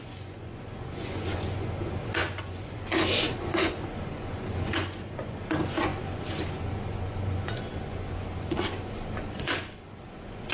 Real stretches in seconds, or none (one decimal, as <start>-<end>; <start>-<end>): none